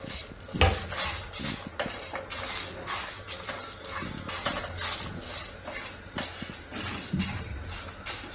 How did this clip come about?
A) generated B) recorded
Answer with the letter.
B